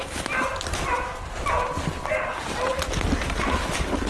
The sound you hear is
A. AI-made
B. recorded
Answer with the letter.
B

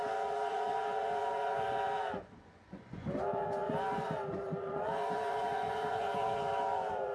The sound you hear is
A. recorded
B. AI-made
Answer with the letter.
B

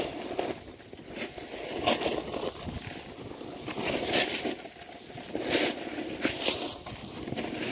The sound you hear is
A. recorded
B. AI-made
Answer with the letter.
A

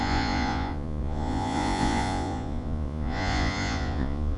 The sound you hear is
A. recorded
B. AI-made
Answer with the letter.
B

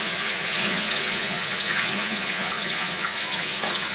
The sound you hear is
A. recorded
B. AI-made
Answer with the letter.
B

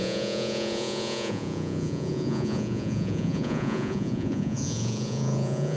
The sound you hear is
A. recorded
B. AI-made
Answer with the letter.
B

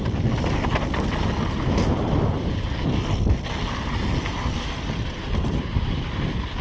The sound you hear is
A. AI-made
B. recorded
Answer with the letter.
B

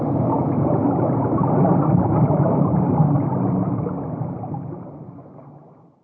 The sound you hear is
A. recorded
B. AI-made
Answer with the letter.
A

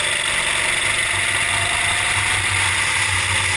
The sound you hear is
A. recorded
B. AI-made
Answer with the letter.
A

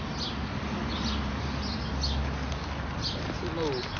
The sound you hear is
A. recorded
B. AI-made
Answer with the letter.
A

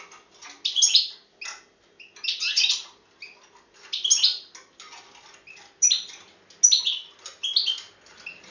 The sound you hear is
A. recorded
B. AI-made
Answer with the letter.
A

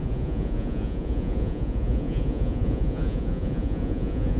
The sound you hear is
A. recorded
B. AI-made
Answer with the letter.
B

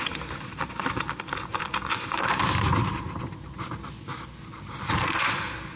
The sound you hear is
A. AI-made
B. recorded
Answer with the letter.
B